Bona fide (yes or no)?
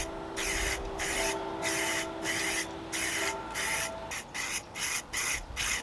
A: yes